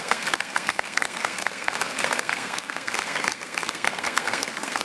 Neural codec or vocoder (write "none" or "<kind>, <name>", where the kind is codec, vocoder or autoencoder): codec, SNAC